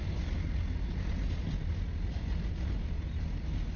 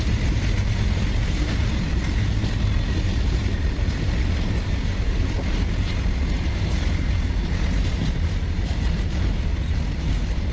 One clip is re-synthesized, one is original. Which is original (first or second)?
first